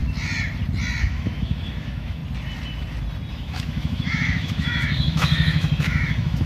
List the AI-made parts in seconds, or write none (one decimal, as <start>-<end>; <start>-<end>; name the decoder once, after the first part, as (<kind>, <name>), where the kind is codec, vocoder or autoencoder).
1.0-2.2 (autoencoder, DAC-VAE); 3.3-6.5